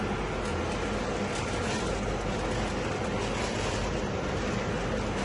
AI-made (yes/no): no